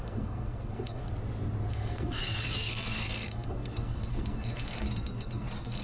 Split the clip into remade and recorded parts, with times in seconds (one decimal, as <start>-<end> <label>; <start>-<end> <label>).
0.0-1.0 remade; 1.0-1.7 recorded; 1.7-5.8 remade